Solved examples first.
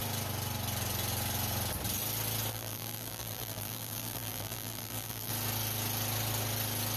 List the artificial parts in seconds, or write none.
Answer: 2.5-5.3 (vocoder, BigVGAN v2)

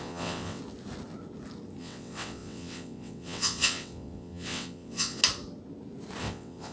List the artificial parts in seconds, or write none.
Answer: 0.0-0.6 (vocoder, WaveNeXt); 1.8-5.2; 6.2-6.7